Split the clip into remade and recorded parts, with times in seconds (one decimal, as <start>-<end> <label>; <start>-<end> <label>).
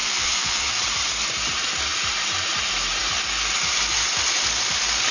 0.0-0.7 remade; 0.7-5.1 recorded